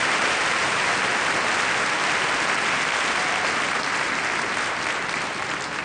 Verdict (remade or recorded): recorded